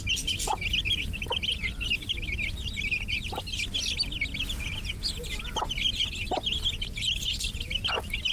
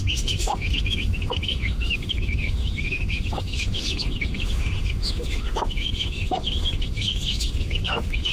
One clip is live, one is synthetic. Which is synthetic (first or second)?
second